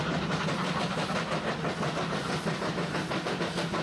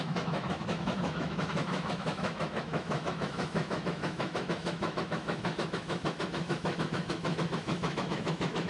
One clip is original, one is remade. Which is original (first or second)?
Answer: first